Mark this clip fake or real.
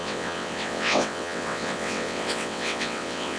fake